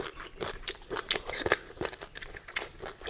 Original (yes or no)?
yes